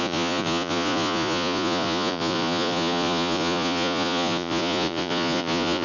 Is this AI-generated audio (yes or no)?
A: yes